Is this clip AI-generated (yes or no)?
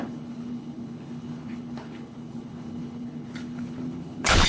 yes